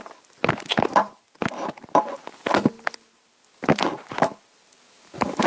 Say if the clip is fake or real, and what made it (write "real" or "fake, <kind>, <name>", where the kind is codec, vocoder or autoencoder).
real